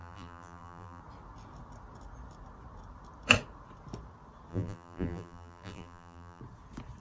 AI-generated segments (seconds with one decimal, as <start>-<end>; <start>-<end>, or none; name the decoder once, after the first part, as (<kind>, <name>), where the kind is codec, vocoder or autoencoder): 0.0-1.0 (vocoder, BigVGAN v2); 4.5-6.4

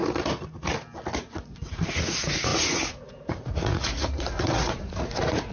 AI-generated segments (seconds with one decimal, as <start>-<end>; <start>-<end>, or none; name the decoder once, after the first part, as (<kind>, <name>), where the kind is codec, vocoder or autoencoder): 1.2-5.5 (vocoder, Vocos)

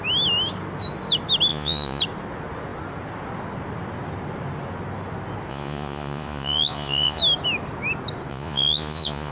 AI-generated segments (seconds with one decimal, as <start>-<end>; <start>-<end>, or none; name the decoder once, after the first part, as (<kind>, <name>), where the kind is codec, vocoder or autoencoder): 1.5-2.0 (vocoder, Vocos); 5.5-7.2; 8.3-9.3

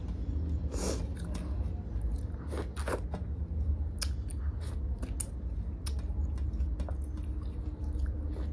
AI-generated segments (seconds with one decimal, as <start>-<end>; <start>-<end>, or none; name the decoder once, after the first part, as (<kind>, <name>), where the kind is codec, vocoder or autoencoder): none

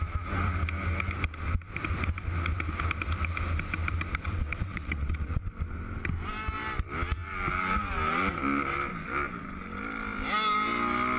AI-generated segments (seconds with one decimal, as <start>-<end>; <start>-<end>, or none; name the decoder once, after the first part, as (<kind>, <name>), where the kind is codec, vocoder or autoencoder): 4.2-5.5 (vocoder, WaveNeXt)

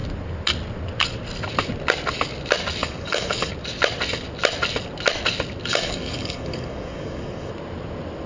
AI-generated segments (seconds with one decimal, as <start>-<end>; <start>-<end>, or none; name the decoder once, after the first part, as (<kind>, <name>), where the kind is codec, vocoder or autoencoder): 2.8-3.5 (codec, DAC); 5.7-7.5